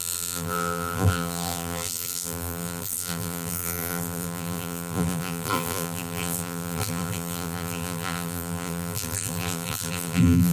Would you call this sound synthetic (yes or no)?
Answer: yes